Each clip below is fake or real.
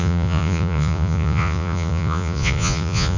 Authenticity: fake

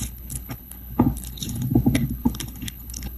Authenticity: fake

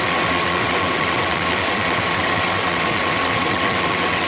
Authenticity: fake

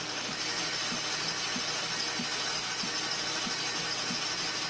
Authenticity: real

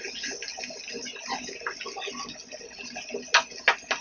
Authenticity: real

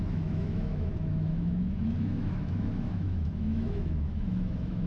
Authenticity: fake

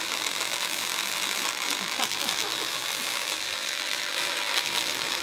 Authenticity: fake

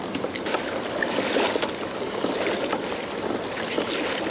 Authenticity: real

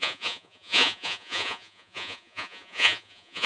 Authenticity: fake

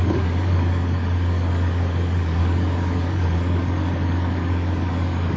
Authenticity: fake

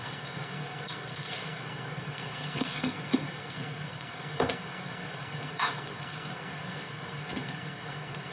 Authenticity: fake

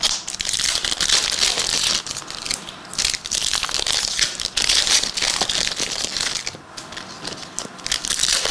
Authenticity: real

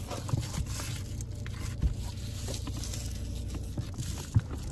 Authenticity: real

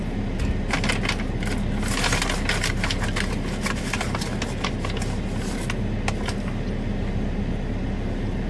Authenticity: real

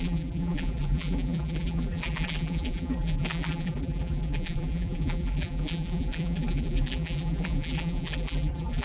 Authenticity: fake